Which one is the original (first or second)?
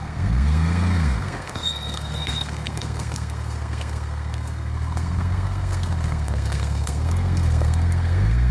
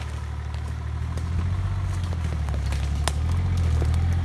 second